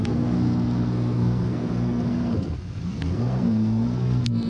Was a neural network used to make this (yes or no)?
yes